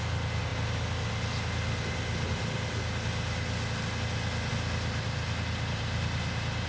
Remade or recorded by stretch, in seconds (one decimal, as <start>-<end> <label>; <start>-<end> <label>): 0.0-6.7 recorded